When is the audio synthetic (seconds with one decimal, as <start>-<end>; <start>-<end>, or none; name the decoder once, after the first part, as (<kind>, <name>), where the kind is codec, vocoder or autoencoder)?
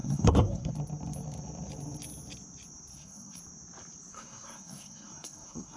0.0-0.7 (codec, SNAC); 2.9-3.4; 4.1-5.8